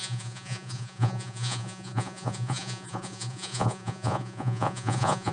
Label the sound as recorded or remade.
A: remade